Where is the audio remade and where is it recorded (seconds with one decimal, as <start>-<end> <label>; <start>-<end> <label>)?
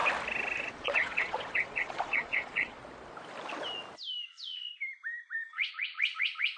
0.0-0.7 recorded; 0.7-2.8 remade; 2.8-4.3 recorded; 4.3-4.7 remade; 4.7-5.4 recorded; 5.4-6.6 remade